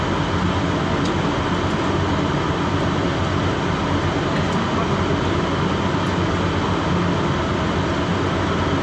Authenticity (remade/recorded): recorded